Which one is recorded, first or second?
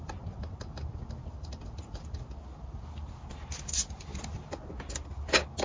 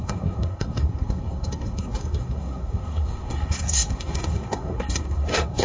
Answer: first